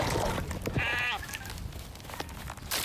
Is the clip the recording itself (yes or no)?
yes